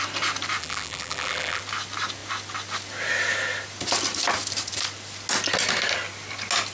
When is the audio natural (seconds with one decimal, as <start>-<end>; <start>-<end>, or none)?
0.0-0.6; 1.6-6.7